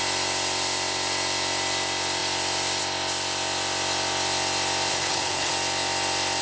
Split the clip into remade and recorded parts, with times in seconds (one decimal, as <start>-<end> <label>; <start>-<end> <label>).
0.0-4.9 recorded; 4.9-5.5 remade; 5.5-6.4 recorded